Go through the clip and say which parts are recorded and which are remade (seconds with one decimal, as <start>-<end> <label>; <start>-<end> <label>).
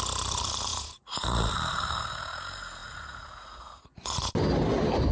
0.0-0.7 recorded; 0.7-1.5 remade; 1.5-2.8 recorded; 2.8-4.3 remade; 4.3-5.1 recorded